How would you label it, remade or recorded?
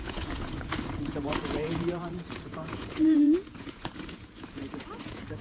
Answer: remade